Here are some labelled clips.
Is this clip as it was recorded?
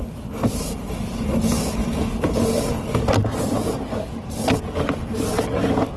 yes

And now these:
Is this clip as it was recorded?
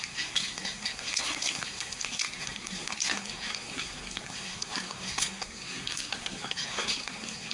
no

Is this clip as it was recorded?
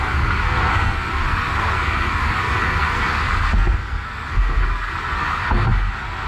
no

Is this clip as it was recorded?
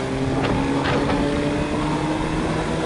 yes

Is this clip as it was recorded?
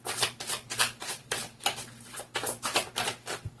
yes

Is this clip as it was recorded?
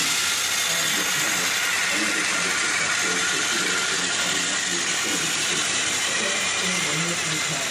yes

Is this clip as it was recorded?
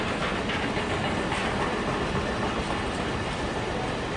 yes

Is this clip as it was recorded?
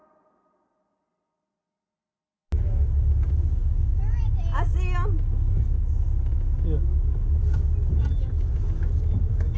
yes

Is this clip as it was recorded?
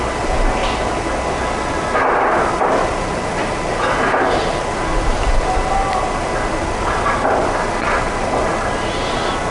yes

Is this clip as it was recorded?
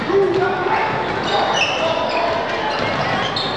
yes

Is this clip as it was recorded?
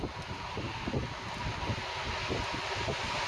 yes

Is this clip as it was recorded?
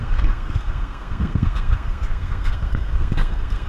no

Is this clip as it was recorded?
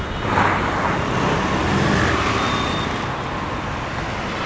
yes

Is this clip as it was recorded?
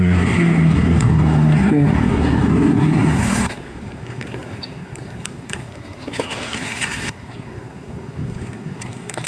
no